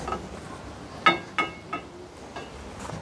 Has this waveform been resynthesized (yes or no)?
no